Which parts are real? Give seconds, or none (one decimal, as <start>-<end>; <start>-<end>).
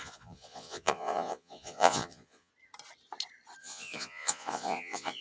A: 2.5-3.6